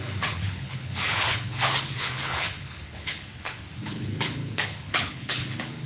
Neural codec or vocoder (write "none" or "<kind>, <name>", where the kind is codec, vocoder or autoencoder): codec, HILCodec